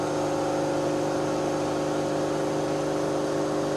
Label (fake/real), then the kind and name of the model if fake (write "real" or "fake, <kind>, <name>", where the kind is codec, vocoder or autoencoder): real